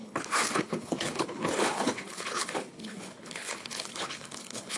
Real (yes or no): no